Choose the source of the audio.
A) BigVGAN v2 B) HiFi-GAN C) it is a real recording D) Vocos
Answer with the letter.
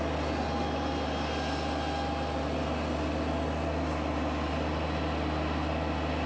C